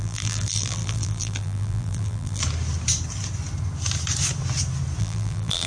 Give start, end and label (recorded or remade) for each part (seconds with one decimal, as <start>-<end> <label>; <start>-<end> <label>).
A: 0.0-2.4 remade; 2.4-5.0 recorded; 5.0-5.7 remade